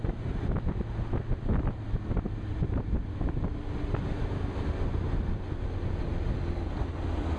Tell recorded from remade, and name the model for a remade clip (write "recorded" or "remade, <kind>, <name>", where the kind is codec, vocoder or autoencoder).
recorded